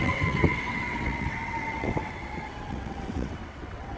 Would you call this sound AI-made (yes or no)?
yes